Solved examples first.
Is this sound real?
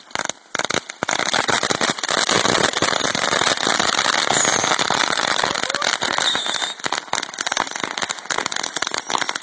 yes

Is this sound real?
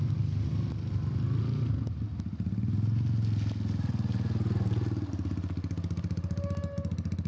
yes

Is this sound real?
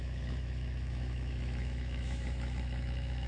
no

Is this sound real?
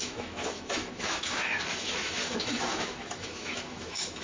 no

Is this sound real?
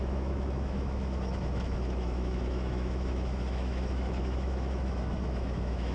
no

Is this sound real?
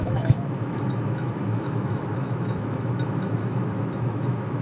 no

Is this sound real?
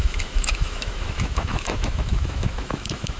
no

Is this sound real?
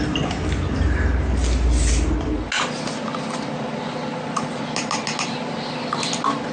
yes